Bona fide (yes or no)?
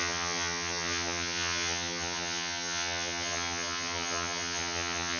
no